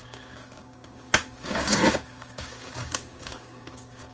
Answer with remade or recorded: remade